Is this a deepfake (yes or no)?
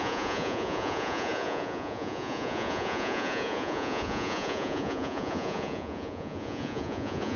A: yes